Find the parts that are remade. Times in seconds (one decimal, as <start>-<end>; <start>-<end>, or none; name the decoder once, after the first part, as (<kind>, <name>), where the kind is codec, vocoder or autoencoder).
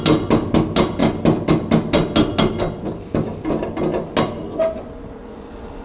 none